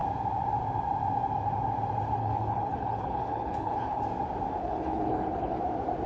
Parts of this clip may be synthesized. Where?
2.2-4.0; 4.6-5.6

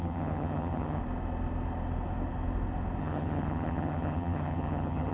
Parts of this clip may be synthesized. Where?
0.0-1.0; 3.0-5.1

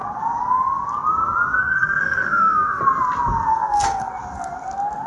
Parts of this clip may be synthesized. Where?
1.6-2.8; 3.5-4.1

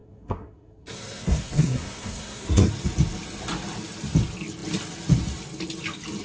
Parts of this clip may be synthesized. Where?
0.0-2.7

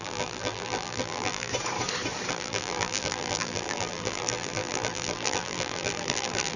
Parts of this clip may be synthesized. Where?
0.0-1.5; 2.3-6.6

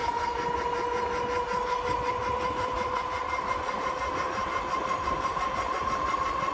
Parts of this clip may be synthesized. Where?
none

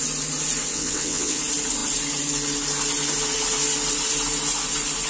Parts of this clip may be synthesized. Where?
0.7-1.4

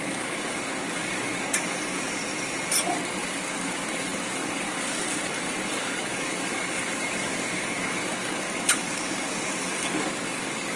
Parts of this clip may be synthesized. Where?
0.0-2.2; 3.2-10.8